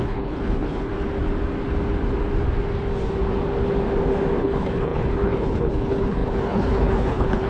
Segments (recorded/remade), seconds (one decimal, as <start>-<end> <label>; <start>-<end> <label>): 0.0-0.9 remade; 0.9-4.4 recorded; 4.4-7.5 remade